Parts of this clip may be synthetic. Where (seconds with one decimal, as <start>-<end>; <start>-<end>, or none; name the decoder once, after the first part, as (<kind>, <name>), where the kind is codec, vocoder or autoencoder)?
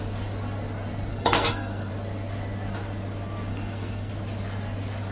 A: 1.1-1.9 (codec, SNAC); 3.5-4.1